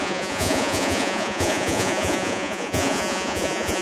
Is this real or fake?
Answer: fake